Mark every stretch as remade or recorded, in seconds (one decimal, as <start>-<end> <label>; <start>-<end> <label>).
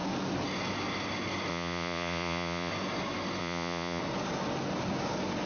0.0-1.5 recorded; 1.5-2.7 remade; 2.7-3.4 recorded; 3.4-4.0 remade; 4.0-5.5 recorded